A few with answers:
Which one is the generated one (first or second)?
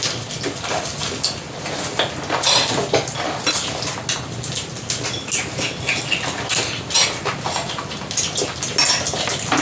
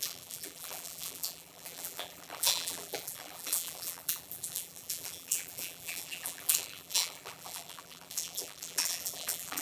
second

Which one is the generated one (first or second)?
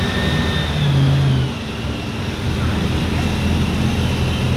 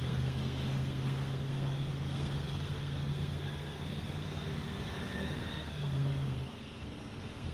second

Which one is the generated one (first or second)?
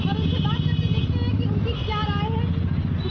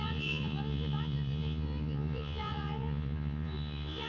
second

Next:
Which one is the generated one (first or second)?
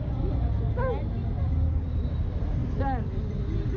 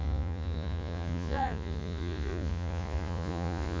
second